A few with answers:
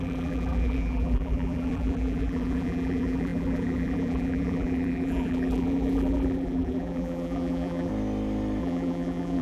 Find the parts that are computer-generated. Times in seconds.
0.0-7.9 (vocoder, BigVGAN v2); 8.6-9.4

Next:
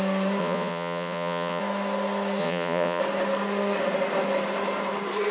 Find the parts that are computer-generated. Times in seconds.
0.4-1.6 (vocoder, Vocos); 2.4-3.0

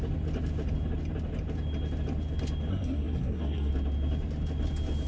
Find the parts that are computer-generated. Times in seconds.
2.7-3.7 (codec, SNAC)

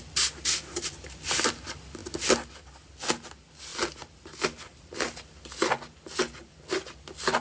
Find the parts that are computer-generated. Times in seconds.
none

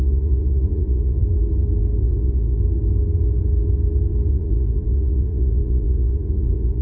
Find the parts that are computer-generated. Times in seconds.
0.0-1.2 (vocoder, Vocos); 2.0-2.6; 4.3-6.8

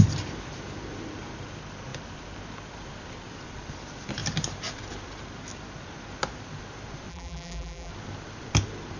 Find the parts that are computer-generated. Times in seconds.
7.1-7.9 (vocoder, BigVGAN v2)